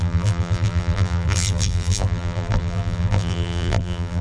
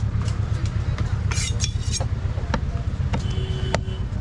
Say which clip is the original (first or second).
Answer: second